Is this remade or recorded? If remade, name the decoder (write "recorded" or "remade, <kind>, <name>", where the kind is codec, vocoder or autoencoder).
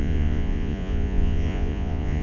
remade, vocoder, Vocos